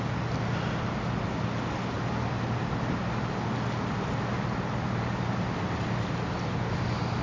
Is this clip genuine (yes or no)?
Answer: yes